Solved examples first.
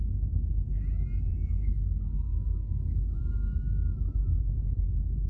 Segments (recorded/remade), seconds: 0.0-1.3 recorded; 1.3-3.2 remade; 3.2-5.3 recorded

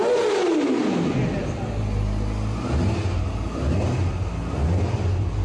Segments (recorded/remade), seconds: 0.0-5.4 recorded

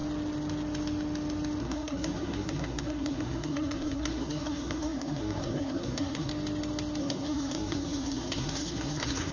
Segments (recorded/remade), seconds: 0.0-1.6 recorded; 1.6-6.3 remade; 6.3-7.0 recorded; 7.0-9.3 remade

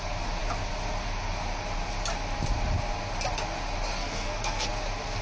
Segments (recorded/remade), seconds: 0.0-4.0 recorded; 4.0-4.7 remade; 4.7-5.2 recorded

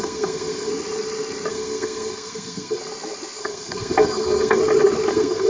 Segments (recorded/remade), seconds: 0.0-0.7 remade; 0.7-1.5 recorded; 1.5-2.8 remade; 2.8-3.4 recorded; 3.4-4.6 remade; 4.6-5.1 recorded; 5.1-5.5 remade

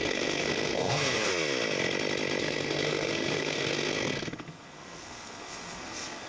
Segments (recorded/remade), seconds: 0.0-1.3 remade; 1.3-2.4 recorded; 2.4-6.3 remade